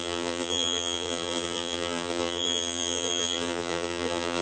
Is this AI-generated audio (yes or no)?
yes